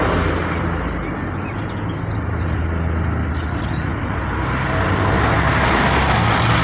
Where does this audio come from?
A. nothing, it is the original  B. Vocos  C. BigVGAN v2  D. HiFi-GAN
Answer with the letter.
A